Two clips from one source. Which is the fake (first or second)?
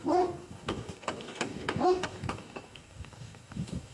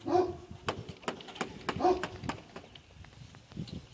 first